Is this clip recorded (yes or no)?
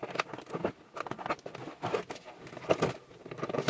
yes